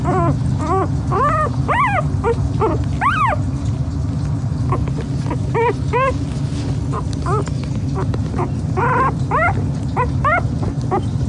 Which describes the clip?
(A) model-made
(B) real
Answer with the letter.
B